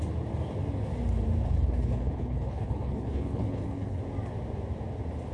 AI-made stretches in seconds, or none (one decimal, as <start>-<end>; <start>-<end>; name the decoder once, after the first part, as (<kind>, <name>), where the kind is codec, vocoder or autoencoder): 1.4-4.0 (codec, HILCodec)